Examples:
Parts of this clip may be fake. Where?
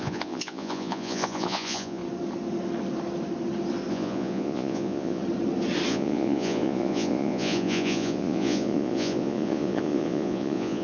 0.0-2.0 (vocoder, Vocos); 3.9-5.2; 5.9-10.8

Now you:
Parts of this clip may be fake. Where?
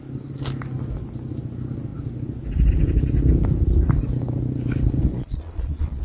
5.0-6.0 (vocoder, Vocos)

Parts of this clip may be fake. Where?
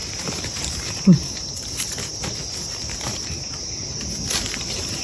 none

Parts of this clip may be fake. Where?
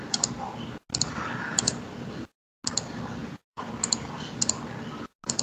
3.2-3.7 (vocoder, Vocos)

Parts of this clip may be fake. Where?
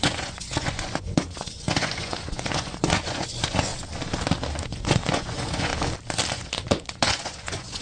0.0-3.7 (vocoder, Vocos); 4.6-5.7; 6.3-7.8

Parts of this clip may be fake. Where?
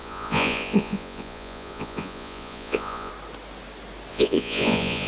0.0-3.1 (vocoder, Vocos); 4.1-5.1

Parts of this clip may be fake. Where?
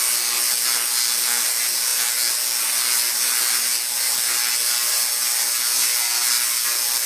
none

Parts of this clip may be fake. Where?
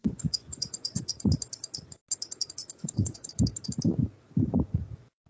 0.0-1.1 (vocoder, Vocos); 2.6-3.3